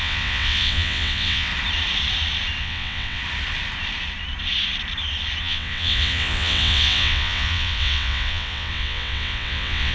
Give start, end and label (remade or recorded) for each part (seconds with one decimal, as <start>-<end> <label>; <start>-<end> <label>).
0.0-1.5 remade; 1.5-2.6 recorded; 2.6-3.2 remade; 3.2-5.4 recorded; 5.4-9.9 remade